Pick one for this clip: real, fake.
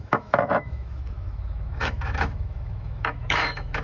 fake